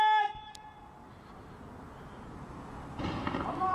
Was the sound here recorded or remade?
recorded